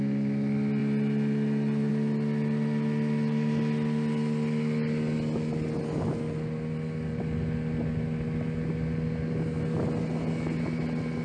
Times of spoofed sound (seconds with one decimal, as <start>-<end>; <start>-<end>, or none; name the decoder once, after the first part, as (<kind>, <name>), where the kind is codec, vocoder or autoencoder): none

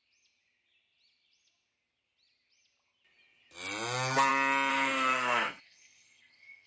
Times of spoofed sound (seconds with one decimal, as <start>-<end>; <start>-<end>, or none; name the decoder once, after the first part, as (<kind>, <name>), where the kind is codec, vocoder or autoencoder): 4.7-6.7 (codec, SNAC)